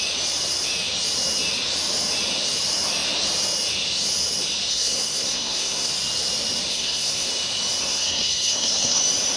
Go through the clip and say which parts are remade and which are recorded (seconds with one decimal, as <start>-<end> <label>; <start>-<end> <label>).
0.0-4.7 recorded; 4.7-5.9 remade; 5.9-6.7 recorded; 6.7-7.3 remade; 7.3-7.8 recorded; 7.8-9.0 remade; 9.0-9.4 recorded